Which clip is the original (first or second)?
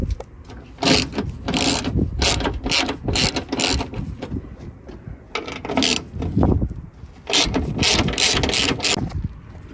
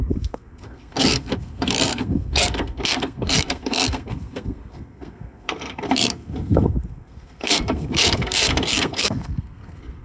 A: first